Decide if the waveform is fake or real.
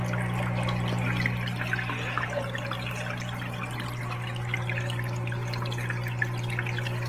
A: real